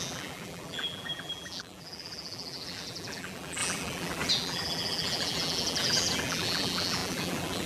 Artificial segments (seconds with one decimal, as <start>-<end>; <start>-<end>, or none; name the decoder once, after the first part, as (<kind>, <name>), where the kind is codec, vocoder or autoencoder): 0.0-7.7 (vocoder, BigVGAN v2)